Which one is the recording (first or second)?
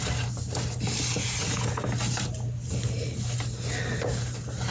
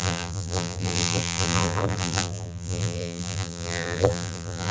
first